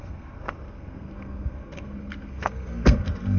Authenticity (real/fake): fake